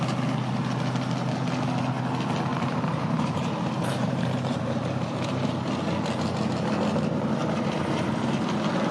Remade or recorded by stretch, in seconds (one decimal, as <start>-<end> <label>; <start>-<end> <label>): 0.0-2.5 recorded; 2.5-5.7 remade; 5.7-7.4 recorded; 7.4-8.1 remade; 8.1-8.9 recorded